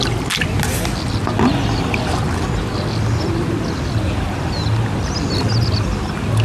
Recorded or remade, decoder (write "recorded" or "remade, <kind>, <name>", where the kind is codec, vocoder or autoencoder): recorded